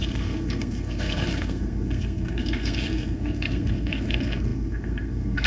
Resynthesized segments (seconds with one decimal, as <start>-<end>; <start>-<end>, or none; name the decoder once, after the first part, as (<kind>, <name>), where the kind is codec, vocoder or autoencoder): 0.0-5.5 (codec, SNAC)